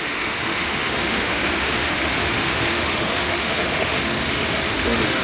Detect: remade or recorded remade